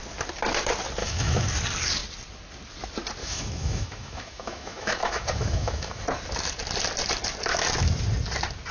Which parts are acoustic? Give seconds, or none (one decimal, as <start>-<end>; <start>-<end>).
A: 0.0-1.0; 1.5-3.2; 6.0-8.7